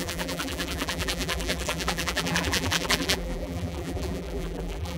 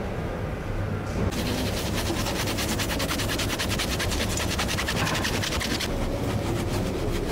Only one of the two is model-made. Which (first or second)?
first